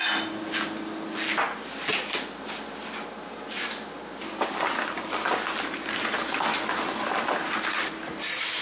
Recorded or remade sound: recorded